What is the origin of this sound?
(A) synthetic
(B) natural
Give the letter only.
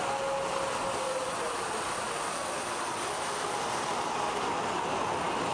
B